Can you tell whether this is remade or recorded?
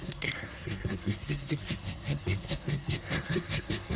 remade